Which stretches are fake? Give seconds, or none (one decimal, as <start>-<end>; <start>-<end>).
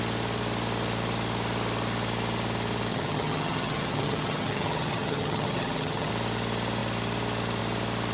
2.9-6.1